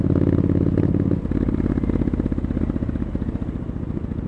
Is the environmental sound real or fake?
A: real